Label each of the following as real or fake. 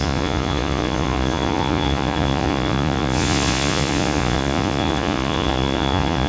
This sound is fake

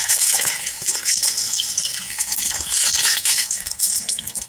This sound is fake